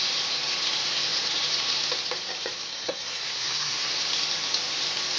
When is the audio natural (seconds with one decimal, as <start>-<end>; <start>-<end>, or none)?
0.0-2.7; 3.9-5.2